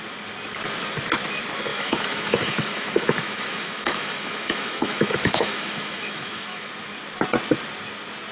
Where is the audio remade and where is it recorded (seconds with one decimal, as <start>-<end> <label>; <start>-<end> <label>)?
0.0-1.7 recorded; 1.7-6.7 remade; 6.7-8.3 recorded